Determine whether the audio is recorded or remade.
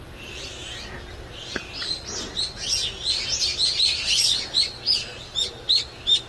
recorded